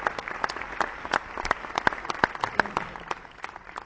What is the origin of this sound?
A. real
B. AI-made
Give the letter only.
A